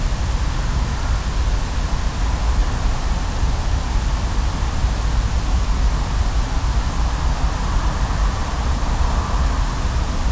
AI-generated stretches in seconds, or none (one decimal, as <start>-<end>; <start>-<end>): 2.6-4.0; 8.4-10.3

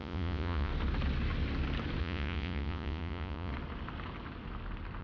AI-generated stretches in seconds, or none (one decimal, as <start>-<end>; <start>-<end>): 0.0-0.7; 2.0-3.5

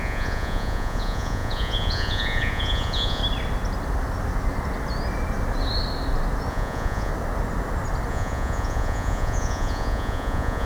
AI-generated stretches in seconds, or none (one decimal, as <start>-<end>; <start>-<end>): 0.0-3.2; 6.5-7.1; 8.1-10.6

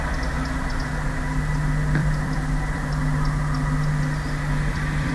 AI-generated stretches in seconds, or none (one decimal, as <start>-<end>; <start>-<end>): 2.0-5.1

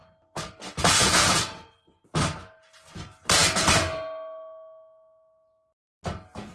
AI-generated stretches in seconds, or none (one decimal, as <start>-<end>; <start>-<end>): 1.0-2.0

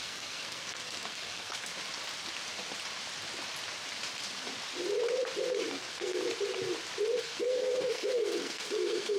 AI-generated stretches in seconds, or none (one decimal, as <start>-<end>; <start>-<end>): 0.0-1.7; 5.7-6.2; 7.2-9.2

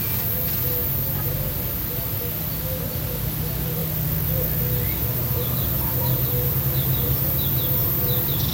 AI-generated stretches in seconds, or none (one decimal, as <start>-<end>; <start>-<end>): 3.8-7.3; 7.8-8.5

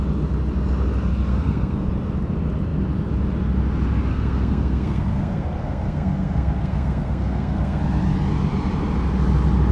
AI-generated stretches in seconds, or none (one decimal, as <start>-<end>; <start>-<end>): 1.3-1.9; 4.1-7.8